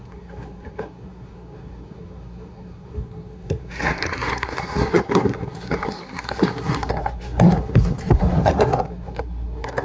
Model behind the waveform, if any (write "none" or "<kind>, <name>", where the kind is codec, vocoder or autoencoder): codec, SNAC